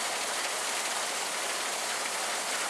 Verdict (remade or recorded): recorded